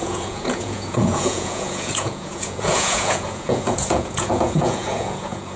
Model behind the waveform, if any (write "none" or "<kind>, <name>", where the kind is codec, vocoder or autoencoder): vocoder, Vocos